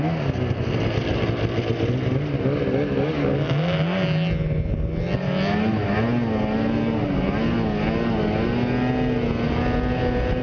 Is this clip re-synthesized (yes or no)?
no